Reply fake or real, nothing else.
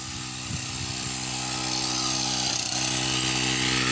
real